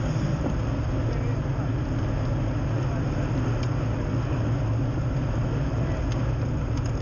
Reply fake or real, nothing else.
real